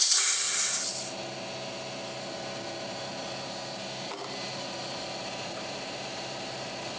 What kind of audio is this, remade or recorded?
recorded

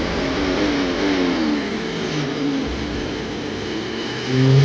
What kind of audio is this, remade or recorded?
recorded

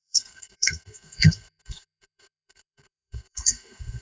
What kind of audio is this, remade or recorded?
remade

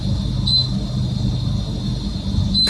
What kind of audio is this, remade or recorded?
recorded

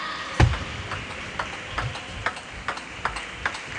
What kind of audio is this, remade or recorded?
recorded